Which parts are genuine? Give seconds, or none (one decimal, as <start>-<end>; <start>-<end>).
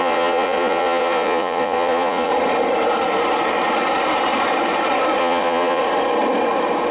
2.3-5.2; 5.8-6.9